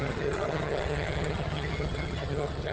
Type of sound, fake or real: fake